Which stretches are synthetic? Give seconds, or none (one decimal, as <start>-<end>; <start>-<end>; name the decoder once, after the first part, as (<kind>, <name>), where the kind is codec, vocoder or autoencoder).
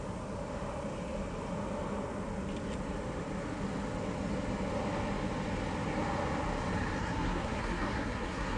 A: 7.0-8.6 (codec, SNAC)